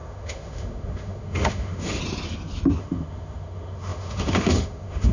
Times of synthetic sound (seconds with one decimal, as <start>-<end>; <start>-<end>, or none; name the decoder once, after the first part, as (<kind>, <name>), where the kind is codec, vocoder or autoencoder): 0.0-2.0 (autoencoder, DAC-VAE); 2.8-5.1